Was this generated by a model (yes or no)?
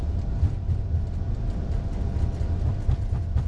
no